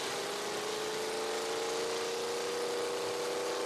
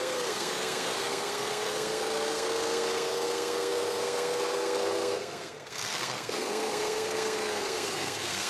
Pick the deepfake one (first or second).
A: second